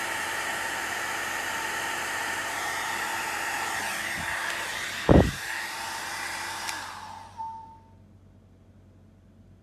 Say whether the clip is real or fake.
real